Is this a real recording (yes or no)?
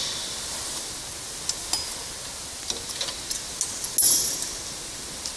yes